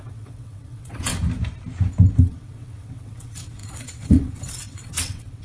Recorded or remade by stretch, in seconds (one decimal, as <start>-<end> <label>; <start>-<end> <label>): 0.0-1.1 remade; 1.1-2.2 recorded; 2.2-5.4 remade